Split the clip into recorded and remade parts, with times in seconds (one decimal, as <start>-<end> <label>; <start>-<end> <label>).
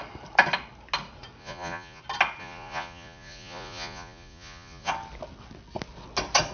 0.0-1.4 recorded; 1.4-2.0 remade; 2.0-2.4 recorded; 2.4-4.9 remade; 4.9-6.5 recorded